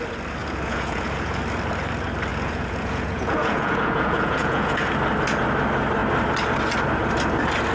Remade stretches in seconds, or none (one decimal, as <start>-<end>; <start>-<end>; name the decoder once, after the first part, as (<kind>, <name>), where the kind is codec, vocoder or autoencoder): 0.4-1.4 (vocoder, Vocos); 2.3-4.9

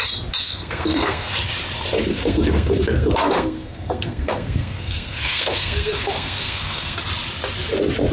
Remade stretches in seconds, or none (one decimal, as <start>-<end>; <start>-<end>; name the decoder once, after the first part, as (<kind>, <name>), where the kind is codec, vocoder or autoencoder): 0.4-1.3 (codec, SNAC); 2.1-7.0

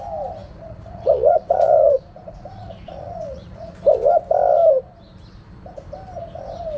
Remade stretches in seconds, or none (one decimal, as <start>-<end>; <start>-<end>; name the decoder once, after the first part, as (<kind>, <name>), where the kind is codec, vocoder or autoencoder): 0.4-3.7 (vocoder, Vocos)